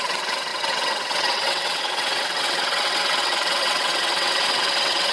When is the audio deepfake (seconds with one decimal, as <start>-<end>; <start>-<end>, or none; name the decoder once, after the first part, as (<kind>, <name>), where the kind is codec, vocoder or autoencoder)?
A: 0.0-5.1 (vocoder, WaveNeXt)

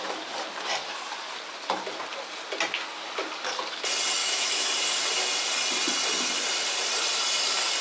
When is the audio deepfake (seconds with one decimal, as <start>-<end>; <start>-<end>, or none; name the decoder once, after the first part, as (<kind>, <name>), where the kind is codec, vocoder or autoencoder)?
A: 4.2-4.7 (autoencoder, DAC-VAE)

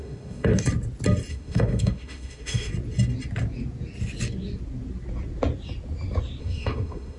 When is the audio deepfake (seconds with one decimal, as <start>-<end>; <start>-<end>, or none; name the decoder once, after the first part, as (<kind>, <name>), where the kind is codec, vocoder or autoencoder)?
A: 0.0-0.5 (autoencoder, DAC-VAE); 1.3-2.7; 6.4-7.2

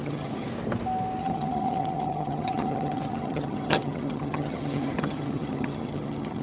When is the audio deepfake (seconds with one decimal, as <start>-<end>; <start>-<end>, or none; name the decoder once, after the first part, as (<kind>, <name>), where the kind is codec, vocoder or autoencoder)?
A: 0.0-0.5 (vocoder, HiFi-GAN); 1.2-6.4

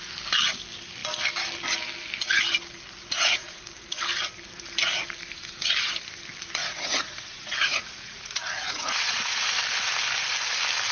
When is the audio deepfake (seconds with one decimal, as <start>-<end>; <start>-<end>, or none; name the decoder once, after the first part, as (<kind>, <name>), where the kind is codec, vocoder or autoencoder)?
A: 3.0-3.6 (vocoder, Vocos); 6.6-9.6

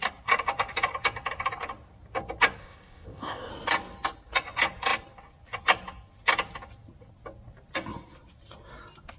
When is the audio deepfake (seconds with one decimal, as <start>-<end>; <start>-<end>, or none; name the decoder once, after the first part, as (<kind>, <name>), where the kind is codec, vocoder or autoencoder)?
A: 2.6-3.5 (codec, ZipCodec)

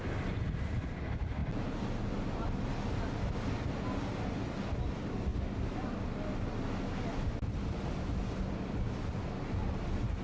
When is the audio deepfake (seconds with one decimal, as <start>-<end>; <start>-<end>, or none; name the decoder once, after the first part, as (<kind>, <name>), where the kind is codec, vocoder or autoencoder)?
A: none

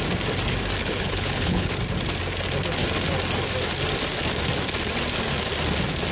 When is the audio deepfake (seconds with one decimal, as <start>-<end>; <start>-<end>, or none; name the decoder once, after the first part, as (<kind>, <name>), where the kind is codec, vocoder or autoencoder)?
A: 0.8-1.8 (codec, HILCodec)